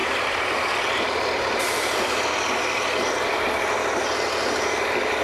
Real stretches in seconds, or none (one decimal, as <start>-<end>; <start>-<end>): 3.1-5.2